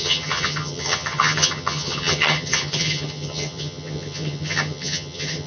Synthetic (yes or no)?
yes